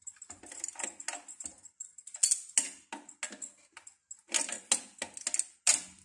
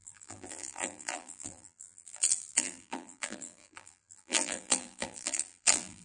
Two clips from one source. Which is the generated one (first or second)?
second